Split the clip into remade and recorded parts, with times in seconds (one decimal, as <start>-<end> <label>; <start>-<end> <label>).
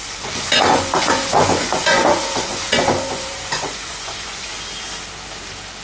0.0-4.5 remade; 4.5-5.8 recorded